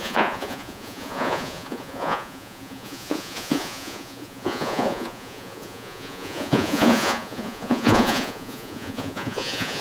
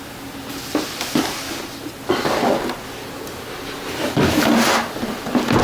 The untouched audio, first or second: second